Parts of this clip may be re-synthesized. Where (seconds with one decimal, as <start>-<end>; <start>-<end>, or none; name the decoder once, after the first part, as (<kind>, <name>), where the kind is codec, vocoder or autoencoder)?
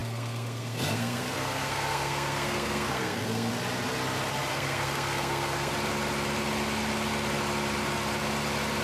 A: 0.0-3.5 (codec, SNAC); 4.5-5.7